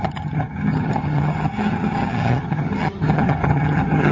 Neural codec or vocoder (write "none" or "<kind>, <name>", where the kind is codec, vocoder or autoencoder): vocoder, HiFi-GAN